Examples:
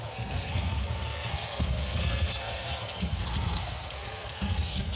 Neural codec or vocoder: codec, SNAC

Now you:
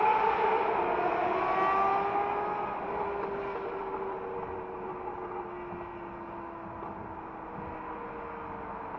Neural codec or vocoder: none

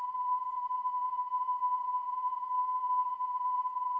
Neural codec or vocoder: vocoder, HiFi-GAN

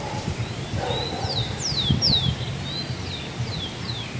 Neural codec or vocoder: vocoder, BigVGAN v2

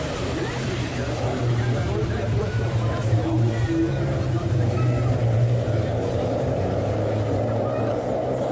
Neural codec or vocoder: vocoder, BigVGAN v2